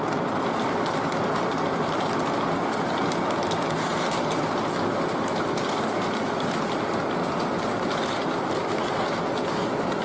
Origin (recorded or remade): recorded